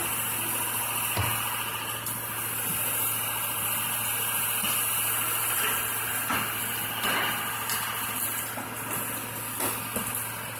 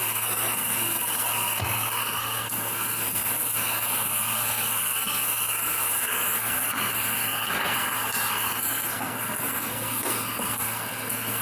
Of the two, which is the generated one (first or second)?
second